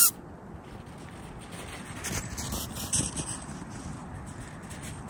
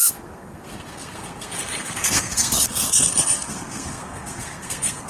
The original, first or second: first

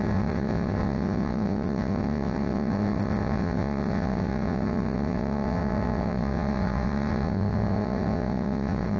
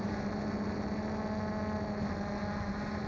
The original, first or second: second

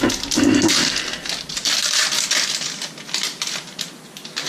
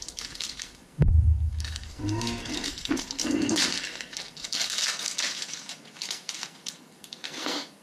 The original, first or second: first